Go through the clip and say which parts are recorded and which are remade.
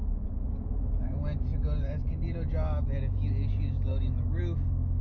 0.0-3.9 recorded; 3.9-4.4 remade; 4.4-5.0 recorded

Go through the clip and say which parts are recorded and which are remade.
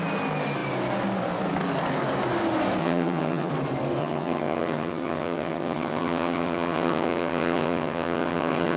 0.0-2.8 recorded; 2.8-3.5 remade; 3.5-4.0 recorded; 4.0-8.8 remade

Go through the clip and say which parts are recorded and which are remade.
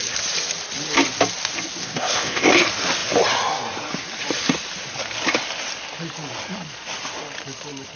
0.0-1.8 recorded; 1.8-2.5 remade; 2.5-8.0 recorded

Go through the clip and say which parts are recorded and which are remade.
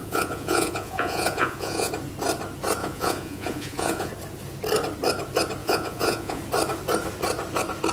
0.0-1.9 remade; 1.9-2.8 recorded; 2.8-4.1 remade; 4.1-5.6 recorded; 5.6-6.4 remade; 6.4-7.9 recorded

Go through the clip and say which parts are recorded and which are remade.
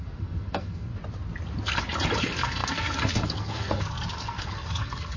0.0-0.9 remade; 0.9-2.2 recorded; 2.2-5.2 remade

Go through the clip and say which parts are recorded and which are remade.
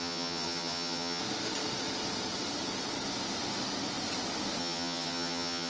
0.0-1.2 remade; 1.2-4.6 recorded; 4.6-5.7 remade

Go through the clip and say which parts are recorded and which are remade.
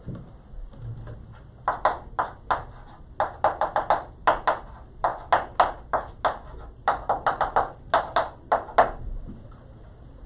0.0-10.3 recorded